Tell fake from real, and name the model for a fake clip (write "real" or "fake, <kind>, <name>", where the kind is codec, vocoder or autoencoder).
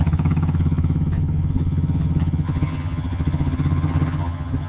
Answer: fake, vocoder, HiFi-GAN